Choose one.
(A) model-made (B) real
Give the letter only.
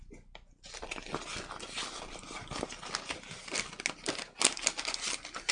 B